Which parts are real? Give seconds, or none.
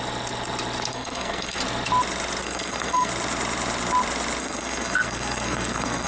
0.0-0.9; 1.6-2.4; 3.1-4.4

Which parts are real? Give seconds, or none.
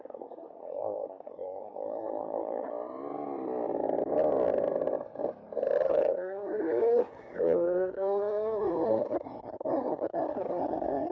2.7-5.9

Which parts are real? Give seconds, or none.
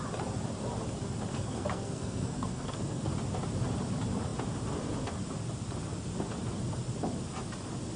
0.0-1.3; 3.1-8.0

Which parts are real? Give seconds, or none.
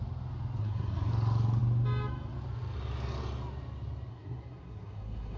0.0-0.6; 1.1-4.1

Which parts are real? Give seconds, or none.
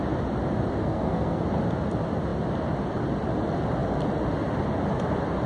0.0-0.8; 1.4-5.5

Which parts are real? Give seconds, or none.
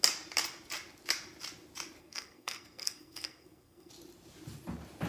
0.0-2.0; 3.9-5.1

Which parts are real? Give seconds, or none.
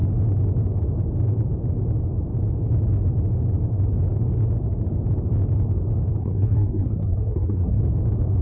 0.0-6.2; 7.8-8.4